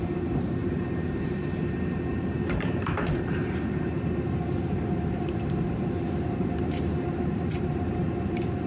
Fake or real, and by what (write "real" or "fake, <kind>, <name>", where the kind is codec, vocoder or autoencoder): fake, vocoder, BigVGAN v2